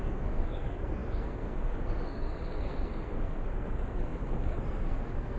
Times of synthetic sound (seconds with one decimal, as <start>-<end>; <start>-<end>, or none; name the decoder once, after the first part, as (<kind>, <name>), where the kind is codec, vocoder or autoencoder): 0.0-5.4 (codec, SNAC)